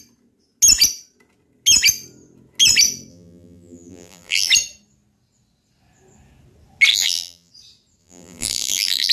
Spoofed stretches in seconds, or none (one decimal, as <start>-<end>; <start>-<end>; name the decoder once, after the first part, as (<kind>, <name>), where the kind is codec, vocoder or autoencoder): 3.1-4.5 (vocoder, BigVGAN v2); 6.9-7.5; 8.0-9.1